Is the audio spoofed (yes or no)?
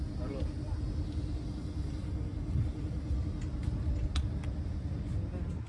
no